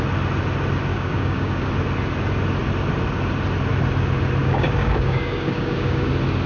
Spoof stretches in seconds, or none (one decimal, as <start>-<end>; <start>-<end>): 0.9-1.7; 4.4-6.1